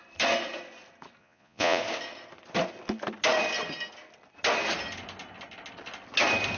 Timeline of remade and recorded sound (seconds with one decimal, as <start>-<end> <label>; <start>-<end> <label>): 0.0-1.2 recorded; 1.2-1.8 remade; 1.8-6.6 recorded